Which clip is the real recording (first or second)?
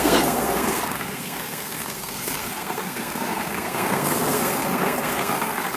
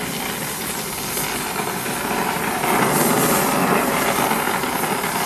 second